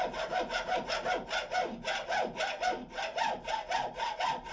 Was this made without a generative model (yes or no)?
yes